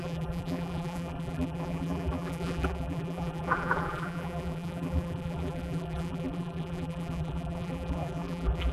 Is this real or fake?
fake